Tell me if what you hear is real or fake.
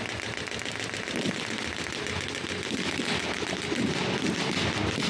real